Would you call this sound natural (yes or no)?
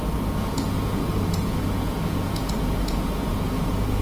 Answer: no